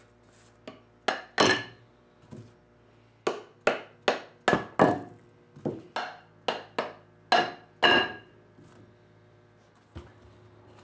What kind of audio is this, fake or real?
real